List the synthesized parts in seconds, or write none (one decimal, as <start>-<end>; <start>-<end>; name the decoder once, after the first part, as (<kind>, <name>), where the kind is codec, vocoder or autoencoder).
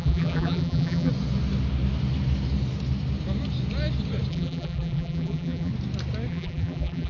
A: 0.0-1.1 (vocoder, BigVGAN v2); 4.3-5.7; 6.3-7.1